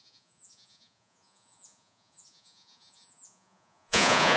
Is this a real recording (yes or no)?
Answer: no